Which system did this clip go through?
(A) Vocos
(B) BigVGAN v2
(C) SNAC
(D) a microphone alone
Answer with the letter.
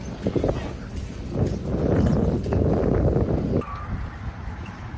D